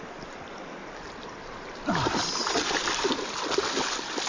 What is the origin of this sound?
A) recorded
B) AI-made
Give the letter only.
A